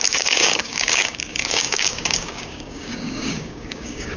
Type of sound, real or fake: fake